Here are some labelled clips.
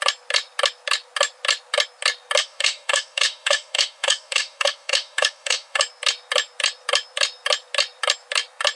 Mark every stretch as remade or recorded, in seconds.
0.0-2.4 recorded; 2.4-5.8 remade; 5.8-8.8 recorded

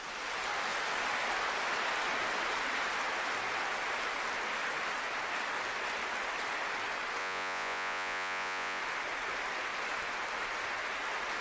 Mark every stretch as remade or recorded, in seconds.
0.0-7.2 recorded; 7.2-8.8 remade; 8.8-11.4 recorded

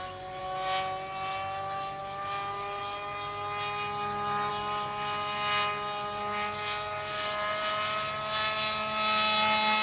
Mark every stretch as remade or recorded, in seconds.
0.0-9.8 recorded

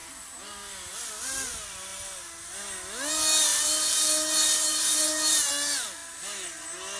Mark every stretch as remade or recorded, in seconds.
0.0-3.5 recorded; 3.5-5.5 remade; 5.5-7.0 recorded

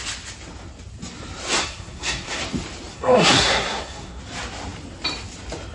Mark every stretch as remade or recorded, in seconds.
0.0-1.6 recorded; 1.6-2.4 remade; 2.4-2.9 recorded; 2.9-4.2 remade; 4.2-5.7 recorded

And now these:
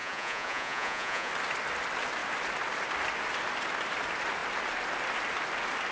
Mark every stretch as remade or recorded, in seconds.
0.0-1.3 remade; 1.3-5.9 recorded

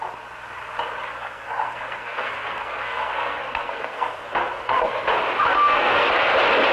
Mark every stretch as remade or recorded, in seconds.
0.0-1.1 recorded; 1.1-5.1 remade; 5.1-5.5 recorded; 5.5-6.1 remade; 6.1-6.7 recorded